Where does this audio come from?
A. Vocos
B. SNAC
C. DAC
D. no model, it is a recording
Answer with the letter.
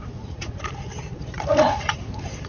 A